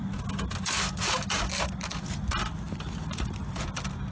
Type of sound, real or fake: real